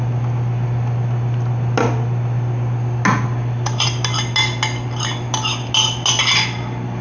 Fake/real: real